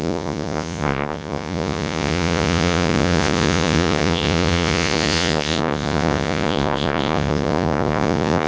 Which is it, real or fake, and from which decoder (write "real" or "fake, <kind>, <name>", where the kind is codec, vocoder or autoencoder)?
fake, vocoder, Vocos